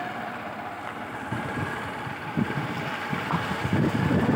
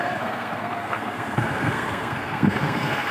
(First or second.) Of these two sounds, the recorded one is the first